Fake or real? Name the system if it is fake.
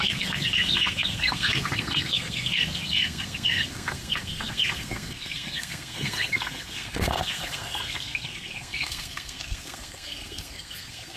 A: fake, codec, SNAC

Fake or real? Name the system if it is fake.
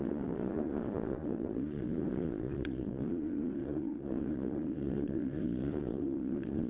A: fake, vocoder, Vocos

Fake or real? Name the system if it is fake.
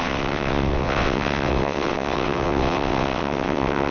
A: fake, vocoder, WaveNeXt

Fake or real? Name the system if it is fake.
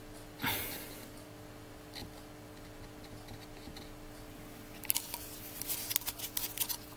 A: real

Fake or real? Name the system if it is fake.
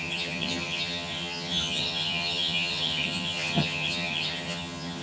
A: fake, vocoder, HiFi-GAN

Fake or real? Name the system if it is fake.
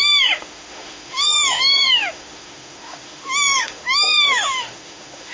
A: fake, autoencoder, DAC-VAE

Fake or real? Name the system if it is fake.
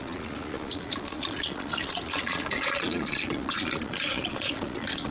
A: fake, vocoder, Vocos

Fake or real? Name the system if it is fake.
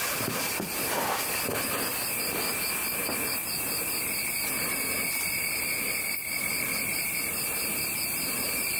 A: real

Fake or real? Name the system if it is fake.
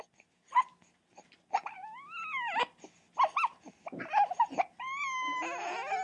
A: real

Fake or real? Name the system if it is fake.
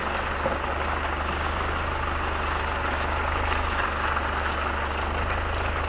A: real